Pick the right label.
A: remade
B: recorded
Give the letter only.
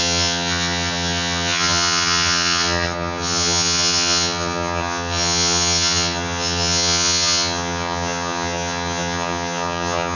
A